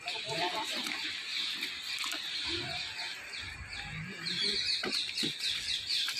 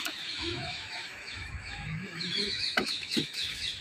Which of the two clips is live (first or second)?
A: first